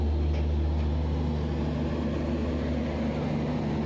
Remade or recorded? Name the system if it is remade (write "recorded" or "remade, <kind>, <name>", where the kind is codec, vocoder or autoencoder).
recorded